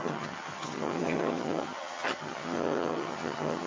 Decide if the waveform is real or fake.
fake